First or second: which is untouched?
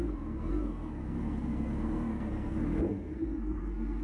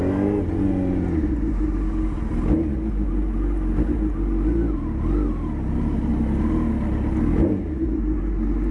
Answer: second